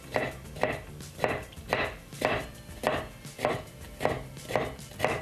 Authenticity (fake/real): fake